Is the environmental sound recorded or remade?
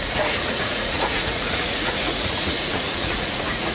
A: remade